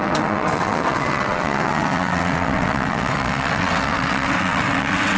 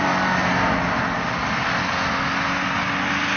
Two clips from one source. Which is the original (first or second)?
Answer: second